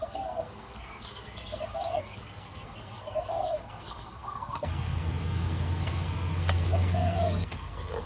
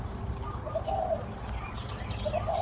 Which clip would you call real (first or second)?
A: second